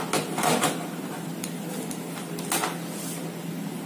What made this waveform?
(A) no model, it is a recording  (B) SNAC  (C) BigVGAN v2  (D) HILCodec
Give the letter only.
A